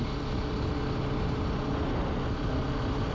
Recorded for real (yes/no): yes